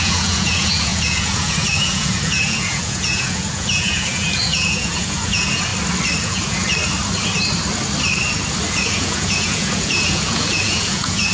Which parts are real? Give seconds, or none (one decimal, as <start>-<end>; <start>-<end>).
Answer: 5.7-6.2; 6.7-8.7